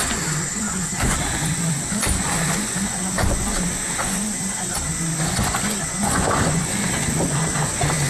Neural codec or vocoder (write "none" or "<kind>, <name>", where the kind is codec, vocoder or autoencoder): vocoder, Vocos